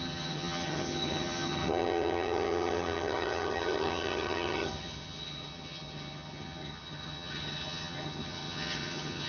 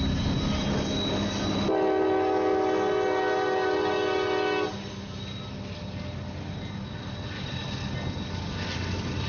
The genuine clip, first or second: second